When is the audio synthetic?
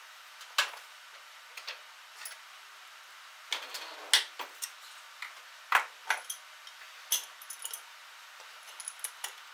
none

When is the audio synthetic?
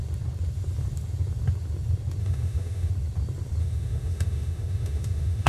2.2-2.9 (autoencoder, DAC-VAE); 3.6-5.5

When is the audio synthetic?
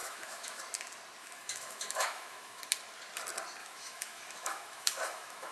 0.0-0.6 (autoencoder, DAC-VAE); 1.2-2.6; 3.6-5.5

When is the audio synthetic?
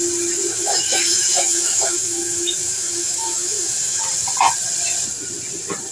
0.5-4.0 (autoencoder, DAC-VAE)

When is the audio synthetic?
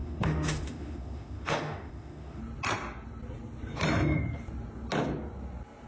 0.0-2.4 (autoencoder, DAC-VAE)